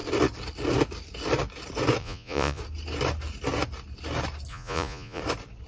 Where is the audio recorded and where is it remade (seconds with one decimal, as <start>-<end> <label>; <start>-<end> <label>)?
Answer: 0.0-2.0 recorded; 2.0-2.6 remade; 2.6-4.5 recorded; 4.5-5.2 remade; 5.2-5.7 recorded